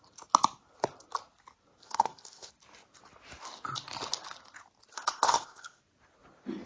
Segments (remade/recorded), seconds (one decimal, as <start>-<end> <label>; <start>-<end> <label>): 0.0-1.8 recorded; 1.8-2.5 remade; 2.5-4.9 recorded; 4.9-5.8 remade; 5.8-6.7 recorded